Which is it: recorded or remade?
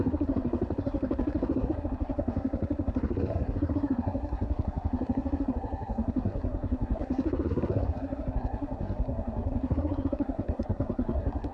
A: remade